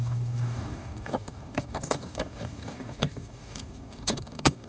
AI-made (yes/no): yes